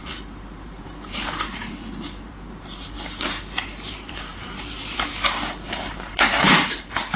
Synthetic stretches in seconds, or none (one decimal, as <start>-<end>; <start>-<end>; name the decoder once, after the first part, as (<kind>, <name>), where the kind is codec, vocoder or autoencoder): 0.0-7.2 (vocoder, BigVGAN v2)